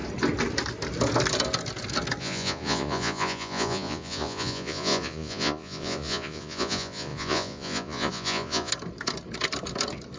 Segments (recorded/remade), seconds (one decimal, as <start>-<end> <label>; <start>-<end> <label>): 0.0-2.2 recorded; 2.2-8.7 remade; 8.7-10.2 recorded

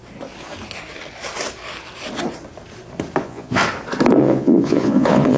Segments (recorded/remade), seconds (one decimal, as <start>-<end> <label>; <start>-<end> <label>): 0.0-3.2 recorded; 3.2-3.6 remade; 3.6-4.2 recorded; 4.2-5.4 remade

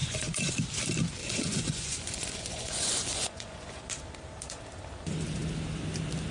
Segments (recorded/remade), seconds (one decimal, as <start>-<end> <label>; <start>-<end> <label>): 0.0-0.5 remade; 0.5-1.2 recorded; 1.2-3.8 remade; 3.8-6.3 recorded

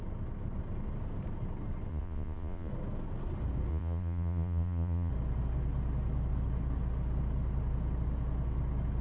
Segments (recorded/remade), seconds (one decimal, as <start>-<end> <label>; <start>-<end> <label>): 0.0-1.9 recorded; 1.9-2.7 remade; 2.7-3.7 recorded; 3.7-5.1 remade; 5.1-9.0 recorded

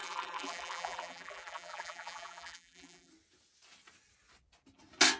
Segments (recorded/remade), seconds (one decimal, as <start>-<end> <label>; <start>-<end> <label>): 0.0-3.1 remade; 3.1-5.2 recorded

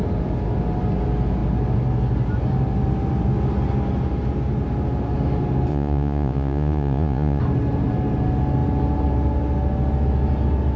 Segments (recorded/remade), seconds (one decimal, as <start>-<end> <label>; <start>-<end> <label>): 0.0-5.7 recorded; 5.7-7.4 remade; 7.4-10.8 recorded

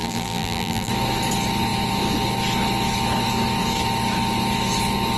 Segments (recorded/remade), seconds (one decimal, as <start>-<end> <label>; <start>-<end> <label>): 0.0-0.9 remade; 0.9-5.2 recorded

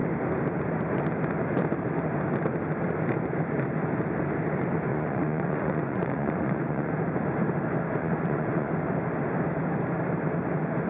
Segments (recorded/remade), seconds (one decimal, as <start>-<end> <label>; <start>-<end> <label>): 0.0-4.9 recorded; 4.9-6.9 remade; 6.9-8.0 recorded; 8.0-8.7 remade; 8.7-10.9 recorded